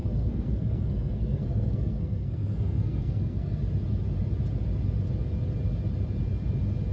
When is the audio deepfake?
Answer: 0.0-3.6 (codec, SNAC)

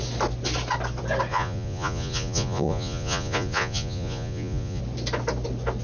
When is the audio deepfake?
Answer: 1.3-4.8 (vocoder, Vocos)

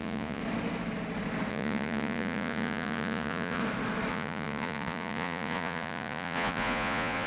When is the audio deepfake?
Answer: 0.0-0.4 (vocoder, Vocos); 1.5-3.6; 4.1-7.3

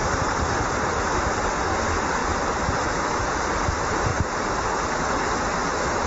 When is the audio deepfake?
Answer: 0.0-1.0 (vocoder, BigVGAN v2); 2.2-3.4; 4.1-5.1